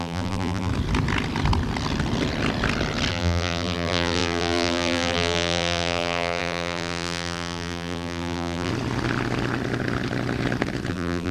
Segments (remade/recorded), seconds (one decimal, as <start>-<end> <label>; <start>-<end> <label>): 0.0-0.7 remade; 0.7-3.1 recorded; 3.1-8.7 remade; 8.7-10.9 recorded; 10.9-11.3 remade